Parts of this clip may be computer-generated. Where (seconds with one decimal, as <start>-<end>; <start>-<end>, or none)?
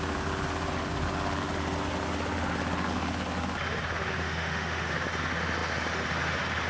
4.2-4.9